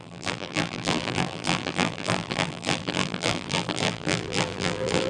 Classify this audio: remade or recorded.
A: remade